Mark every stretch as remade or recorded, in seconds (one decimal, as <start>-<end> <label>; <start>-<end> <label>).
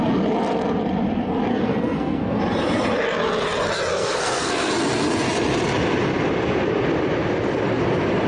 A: 0.0-1.5 recorded; 1.5-2.4 remade; 2.4-3.9 recorded; 3.9-4.7 remade; 4.7-8.3 recorded